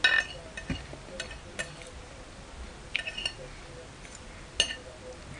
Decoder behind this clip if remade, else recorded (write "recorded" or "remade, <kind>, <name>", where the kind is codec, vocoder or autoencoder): recorded